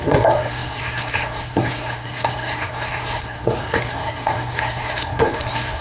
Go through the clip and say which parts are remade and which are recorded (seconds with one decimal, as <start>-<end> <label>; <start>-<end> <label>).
0.0-5.8 remade